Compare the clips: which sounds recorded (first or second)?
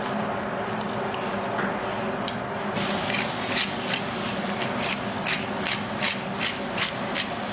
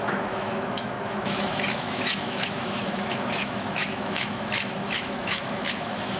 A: first